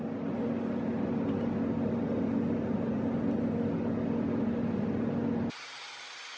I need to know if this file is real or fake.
real